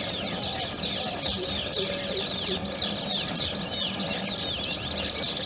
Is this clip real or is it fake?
real